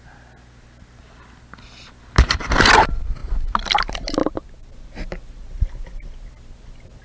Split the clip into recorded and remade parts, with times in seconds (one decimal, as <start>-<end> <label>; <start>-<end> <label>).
0.0-7.0 recorded